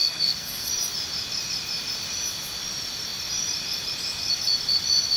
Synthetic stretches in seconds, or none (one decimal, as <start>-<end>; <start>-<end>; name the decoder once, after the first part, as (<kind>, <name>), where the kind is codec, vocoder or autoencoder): 0.0-0.7 (codec, SNAC)